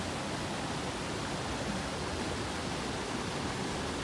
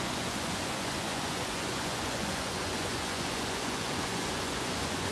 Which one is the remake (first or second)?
second